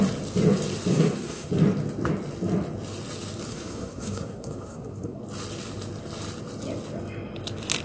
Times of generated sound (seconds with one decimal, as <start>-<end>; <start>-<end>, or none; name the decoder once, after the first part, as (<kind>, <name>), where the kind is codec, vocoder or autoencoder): 0.9-1.5 (codec, SNAC); 3.5-5.2